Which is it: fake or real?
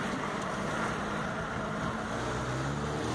real